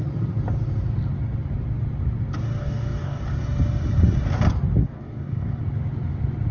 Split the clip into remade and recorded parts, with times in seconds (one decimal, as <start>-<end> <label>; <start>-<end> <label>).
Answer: 0.0-2.6 recorded; 2.6-3.2 remade; 3.2-4.8 recorded; 4.8-5.6 remade; 5.6-6.5 recorded